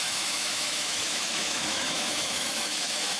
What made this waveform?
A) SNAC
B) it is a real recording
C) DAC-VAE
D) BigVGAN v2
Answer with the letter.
C